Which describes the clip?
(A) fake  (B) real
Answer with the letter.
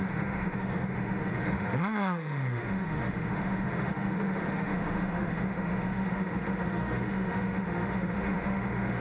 A